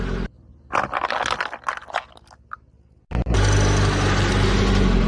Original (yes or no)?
yes